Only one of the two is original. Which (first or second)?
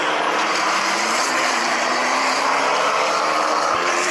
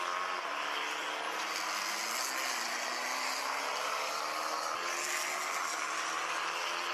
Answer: second